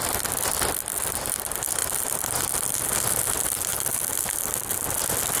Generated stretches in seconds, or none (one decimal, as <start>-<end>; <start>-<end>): none